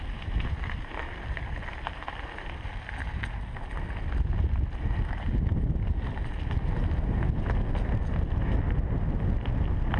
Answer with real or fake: real